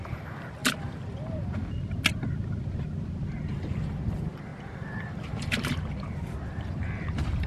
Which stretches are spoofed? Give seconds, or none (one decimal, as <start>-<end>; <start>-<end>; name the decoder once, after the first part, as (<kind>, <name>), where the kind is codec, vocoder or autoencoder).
0.0-1.6 (vocoder, BigVGAN v2); 3.5-7.5

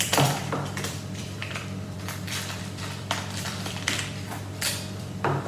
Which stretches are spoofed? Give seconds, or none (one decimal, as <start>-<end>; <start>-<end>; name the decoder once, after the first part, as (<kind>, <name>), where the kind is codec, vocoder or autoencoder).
0.0-5.5 (vocoder, BigVGAN v2)

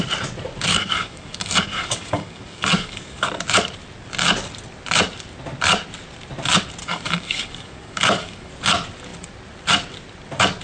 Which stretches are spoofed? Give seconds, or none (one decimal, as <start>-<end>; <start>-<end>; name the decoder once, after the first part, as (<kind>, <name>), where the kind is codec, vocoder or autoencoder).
0.7-3.3 (codec, DAC); 6.8-8.5